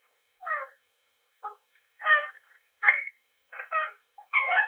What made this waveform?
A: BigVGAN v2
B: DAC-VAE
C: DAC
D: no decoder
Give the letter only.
C